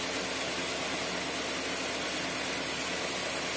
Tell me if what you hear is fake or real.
real